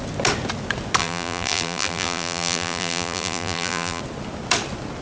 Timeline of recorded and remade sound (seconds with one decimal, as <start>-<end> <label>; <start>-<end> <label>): 0.0-1.0 recorded; 1.0-4.0 remade; 4.0-5.0 recorded

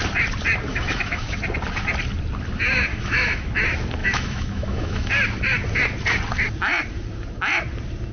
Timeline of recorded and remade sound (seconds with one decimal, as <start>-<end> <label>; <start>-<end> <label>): 0.0-0.7 recorded; 0.7-1.4 remade; 1.4-2.9 recorded; 2.9-3.5 remade; 3.5-4.0 recorded; 4.0-5.1 remade; 5.1-8.1 recorded

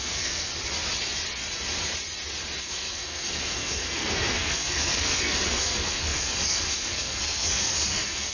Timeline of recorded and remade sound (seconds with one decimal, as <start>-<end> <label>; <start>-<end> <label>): 0.0-0.5 remade; 0.5-2.6 recorded; 2.6-8.3 remade

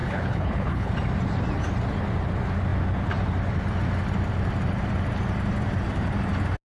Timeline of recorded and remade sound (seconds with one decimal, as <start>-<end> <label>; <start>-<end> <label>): 0.0-0.9 remade; 0.9-6.7 recorded

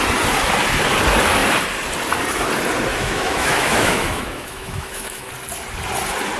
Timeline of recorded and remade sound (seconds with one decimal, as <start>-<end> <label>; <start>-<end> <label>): 0.0-2.9 recorded; 2.9-5.3 remade; 5.3-6.4 recorded

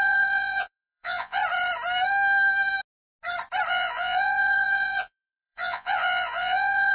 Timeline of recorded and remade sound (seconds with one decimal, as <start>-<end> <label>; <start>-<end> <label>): 0.0-1.4 remade; 1.4-3.7 recorded; 3.7-6.9 remade